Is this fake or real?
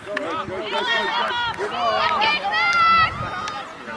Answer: real